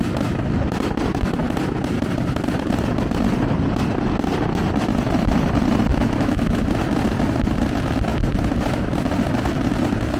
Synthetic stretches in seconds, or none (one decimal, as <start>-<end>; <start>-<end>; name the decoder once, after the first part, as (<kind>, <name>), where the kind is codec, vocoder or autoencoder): 5.9-6.6 (autoencoder, DAC-VAE)